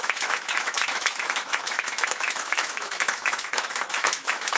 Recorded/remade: remade